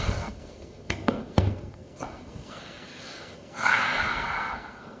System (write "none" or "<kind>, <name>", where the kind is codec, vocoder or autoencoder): codec, SNAC